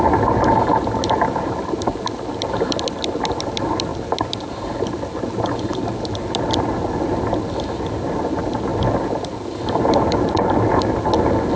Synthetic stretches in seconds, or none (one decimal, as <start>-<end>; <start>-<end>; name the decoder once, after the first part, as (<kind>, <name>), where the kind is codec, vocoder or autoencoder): none